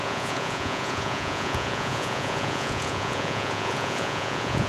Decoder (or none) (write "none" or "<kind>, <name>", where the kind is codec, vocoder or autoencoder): vocoder, Vocos